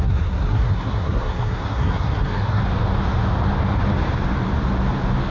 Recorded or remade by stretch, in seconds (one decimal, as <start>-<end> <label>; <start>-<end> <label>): 0.0-2.6 remade; 2.6-5.3 recorded